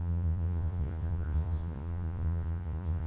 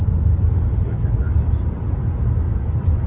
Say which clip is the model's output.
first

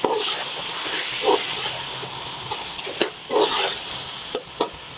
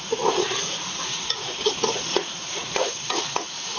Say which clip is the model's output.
second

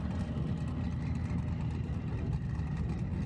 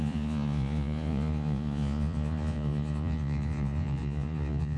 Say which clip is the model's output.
second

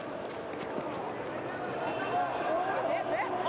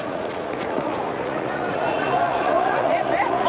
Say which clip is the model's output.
second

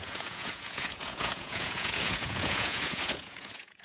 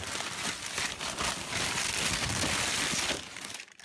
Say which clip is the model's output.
first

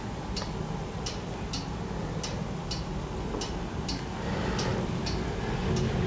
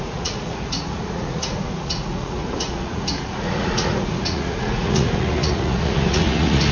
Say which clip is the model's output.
second